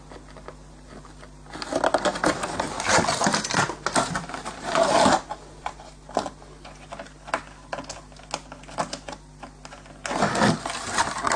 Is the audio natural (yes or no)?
yes